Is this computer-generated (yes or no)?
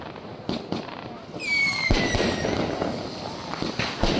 no